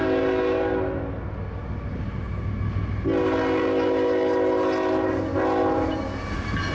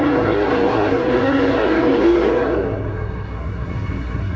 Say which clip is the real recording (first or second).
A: first